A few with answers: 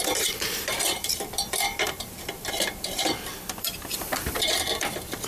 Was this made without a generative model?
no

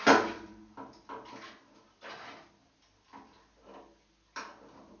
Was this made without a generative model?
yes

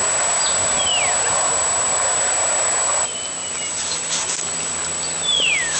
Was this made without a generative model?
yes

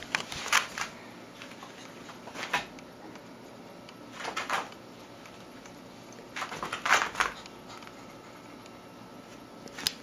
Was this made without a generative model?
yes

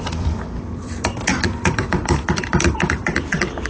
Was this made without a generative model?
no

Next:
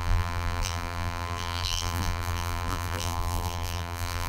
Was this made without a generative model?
no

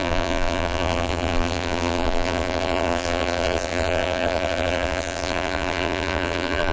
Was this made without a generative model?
no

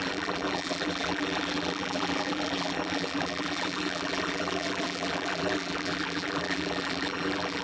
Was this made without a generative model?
no